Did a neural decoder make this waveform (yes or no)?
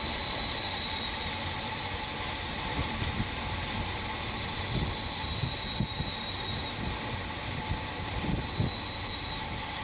no